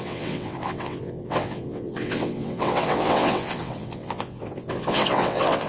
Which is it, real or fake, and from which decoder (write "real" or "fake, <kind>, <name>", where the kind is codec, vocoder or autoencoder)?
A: fake, vocoder, WaveNeXt